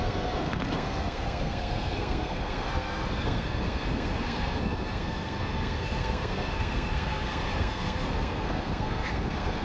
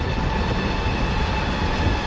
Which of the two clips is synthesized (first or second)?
first